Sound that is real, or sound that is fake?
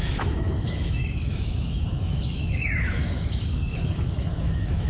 fake